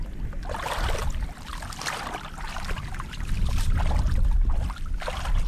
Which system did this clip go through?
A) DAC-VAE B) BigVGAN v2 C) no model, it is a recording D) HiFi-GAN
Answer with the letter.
C